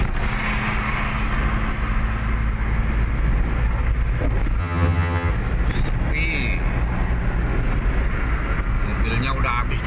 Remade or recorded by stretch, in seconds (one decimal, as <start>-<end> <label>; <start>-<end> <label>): 0.0-4.6 recorded; 4.6-5.3 remade; 5.3-9.9 recorded